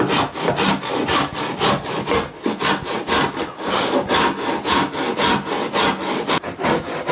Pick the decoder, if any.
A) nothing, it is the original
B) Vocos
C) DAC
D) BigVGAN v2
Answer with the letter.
A